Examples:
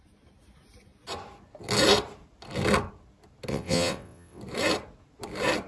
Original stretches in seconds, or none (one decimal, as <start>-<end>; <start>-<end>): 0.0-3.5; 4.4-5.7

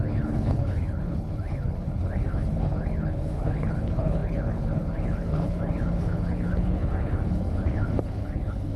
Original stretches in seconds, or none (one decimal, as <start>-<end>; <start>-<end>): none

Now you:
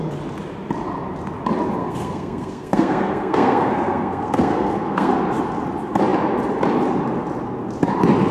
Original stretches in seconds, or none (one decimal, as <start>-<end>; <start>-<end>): 0.0-1.8; 5.1-8.3

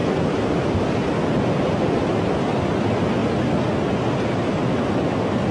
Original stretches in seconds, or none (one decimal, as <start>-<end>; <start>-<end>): 0.0-5.5